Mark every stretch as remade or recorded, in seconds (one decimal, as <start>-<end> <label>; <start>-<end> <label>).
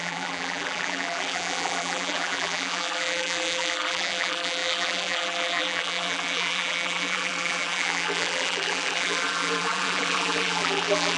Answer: 0.0-11.2 remade